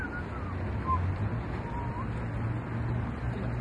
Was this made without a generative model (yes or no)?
yes